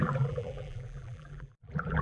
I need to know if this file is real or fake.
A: fake